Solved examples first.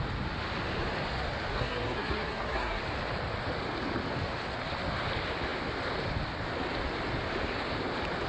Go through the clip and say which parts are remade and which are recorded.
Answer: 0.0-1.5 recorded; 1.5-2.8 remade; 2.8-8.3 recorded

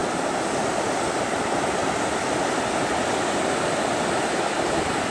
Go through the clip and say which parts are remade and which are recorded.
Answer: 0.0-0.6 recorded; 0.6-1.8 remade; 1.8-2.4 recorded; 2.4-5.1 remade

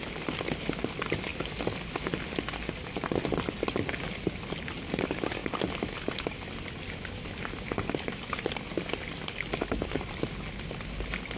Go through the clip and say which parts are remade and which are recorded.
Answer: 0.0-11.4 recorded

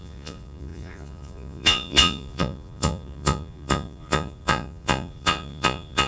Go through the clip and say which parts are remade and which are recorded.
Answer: 0.0-6.1 remade

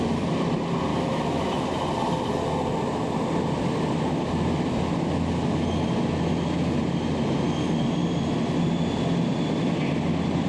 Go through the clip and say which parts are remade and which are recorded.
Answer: 0.0-0.9 recorded; 0.9-1.6 remade; 1.6-10.5 recorded

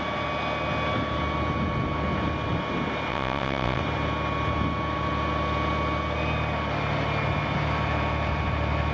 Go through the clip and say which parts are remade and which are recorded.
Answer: 0.0-3.1 recorded; 3.1-3.8 remade; 3.8-8.9 recorded